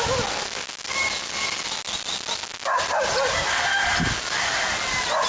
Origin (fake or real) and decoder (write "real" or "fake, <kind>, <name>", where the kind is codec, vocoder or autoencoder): real